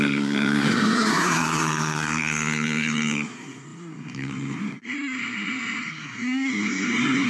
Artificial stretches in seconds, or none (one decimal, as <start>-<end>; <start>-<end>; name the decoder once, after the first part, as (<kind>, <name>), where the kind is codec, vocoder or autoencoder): 0.0-7.3 (codec, SNAC)